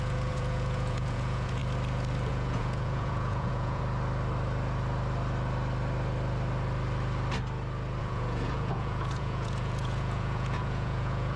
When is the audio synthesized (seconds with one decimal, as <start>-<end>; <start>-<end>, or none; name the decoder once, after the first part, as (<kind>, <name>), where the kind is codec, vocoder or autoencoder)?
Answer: 0.0-1.6 (vocoder, Vocos); 2.3-3.8; 8.0-11.4